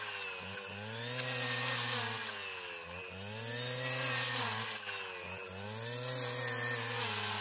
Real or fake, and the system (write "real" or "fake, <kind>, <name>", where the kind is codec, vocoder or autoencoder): real